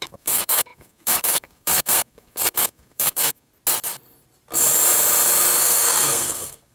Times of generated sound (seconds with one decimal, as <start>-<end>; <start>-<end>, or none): 0.0-3.5; 5.6-6.7